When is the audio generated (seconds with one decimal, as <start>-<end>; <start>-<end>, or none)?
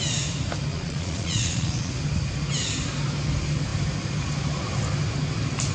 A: 0.7-1.9